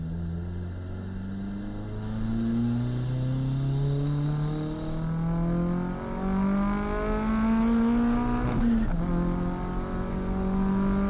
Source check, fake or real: real